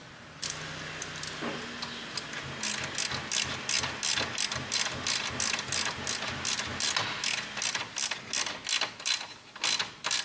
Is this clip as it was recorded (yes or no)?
yes